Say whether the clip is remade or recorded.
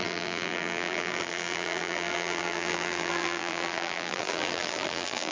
remade